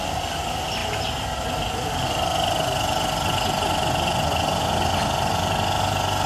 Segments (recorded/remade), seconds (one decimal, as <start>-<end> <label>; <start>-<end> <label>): 0.0-6.3 recorded